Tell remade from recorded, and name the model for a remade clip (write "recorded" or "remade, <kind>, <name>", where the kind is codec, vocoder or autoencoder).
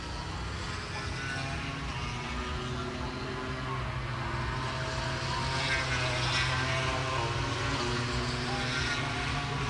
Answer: recorded